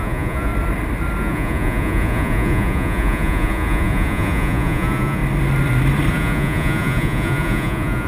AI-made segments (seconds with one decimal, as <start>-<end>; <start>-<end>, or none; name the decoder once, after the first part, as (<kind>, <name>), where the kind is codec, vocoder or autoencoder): 0.0-0.5 (vocoder, Vocos); 1.2-5.2; 6.1-8.1